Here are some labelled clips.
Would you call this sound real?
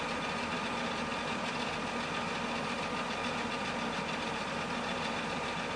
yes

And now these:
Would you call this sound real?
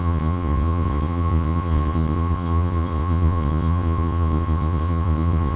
no